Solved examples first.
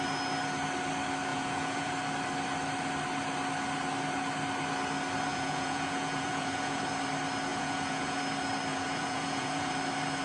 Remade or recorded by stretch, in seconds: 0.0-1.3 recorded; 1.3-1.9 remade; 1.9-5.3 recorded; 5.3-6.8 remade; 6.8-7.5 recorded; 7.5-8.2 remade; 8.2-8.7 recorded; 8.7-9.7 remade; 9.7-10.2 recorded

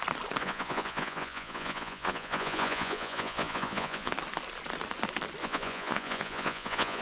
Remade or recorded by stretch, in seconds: 0.0-0.4 recorded; 0.4-4.1 remade; 4.1-5.4 recorded; 5.4-7.0 remade

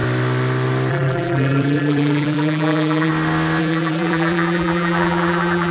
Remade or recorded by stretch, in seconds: 0.0-0.9 recorded; 0.9-3.1 remade; 3.1-3.6 recorded; 3.6-5.7 remade